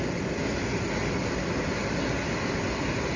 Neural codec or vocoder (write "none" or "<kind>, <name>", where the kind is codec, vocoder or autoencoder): none